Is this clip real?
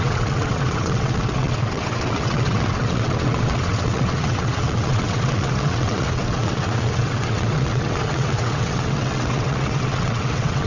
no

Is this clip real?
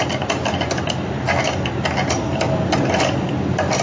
yes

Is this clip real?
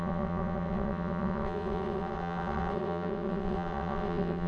no